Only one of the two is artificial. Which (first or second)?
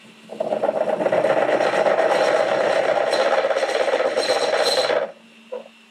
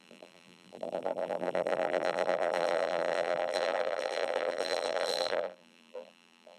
second